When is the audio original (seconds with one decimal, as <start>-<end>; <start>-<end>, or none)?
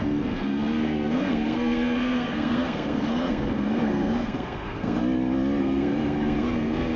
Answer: 5.0-5.6